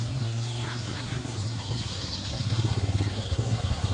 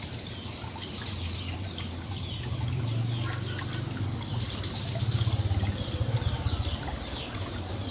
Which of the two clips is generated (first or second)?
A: first